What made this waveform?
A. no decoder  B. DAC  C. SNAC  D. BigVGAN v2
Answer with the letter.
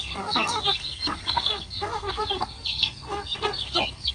C